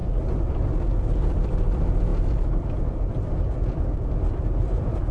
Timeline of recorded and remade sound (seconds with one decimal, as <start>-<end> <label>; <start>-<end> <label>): 0.0-5.1 remade